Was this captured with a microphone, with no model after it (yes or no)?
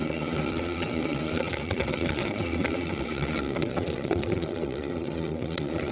no